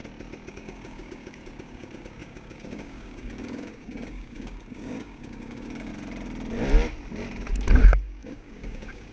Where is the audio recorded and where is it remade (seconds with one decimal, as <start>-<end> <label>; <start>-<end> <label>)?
0.0-0.5 recorded; 0.5-5.9 remade; 5.9-7.8 recorded; 7.8-9.1 remade